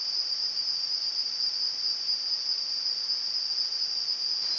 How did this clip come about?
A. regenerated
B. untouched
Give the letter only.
B